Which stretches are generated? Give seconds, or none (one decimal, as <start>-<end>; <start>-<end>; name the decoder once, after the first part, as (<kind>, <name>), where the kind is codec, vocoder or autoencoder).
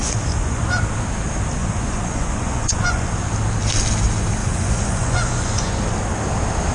0.0-0.6 (vocoder, Vocos); 1.6-3.1; 4.4-5.8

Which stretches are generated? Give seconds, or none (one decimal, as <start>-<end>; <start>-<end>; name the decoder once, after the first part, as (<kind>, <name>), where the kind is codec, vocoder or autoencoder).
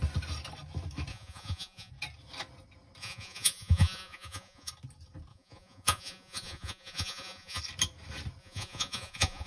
1.1-1.9 (vocoder, Vocos); 3.0-4.7; 5.3-7.6; 8.4-9.5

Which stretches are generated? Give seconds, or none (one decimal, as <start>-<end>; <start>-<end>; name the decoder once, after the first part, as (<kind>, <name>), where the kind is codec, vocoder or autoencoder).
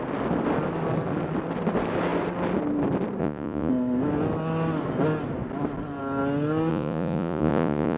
3.2-3.7 (vocoder, Vocos); 6.7-8.0